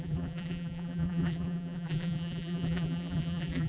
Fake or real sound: fake